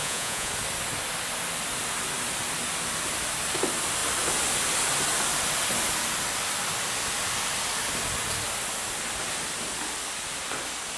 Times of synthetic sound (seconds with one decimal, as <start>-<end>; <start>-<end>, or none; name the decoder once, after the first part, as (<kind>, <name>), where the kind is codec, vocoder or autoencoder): 0.0-0.5 (vocoder, Vocos)